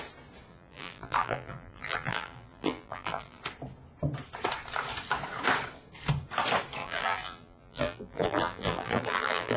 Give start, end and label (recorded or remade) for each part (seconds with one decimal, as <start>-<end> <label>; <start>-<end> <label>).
0.0-0.5 recorded; 0.5-3.4 remade; 3.4-6.8 recorded; 6.8-9.6 remade